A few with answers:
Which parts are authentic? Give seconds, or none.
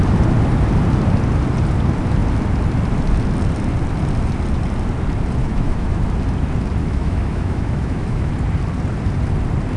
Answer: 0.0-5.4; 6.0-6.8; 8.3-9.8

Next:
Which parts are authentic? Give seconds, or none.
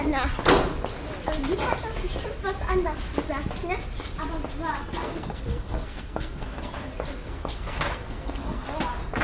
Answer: 0.0-4.8; 6.7-7.2; 8.7-9.2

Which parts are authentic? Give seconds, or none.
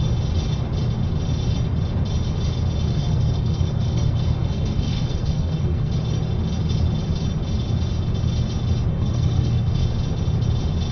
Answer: 0.0-2.9; 5.9-8.9; 9.8-10.9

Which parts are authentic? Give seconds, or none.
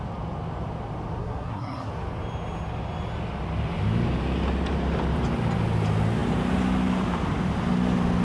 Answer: 0.0-1.2; 1.9-8.2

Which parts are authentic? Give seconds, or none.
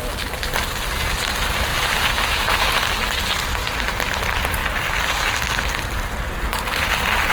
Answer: 0.0-1.7; 2.6-7.3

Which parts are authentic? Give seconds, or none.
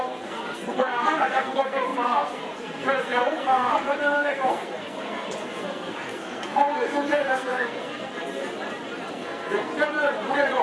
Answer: 8.4-9.1; 9.7-10.6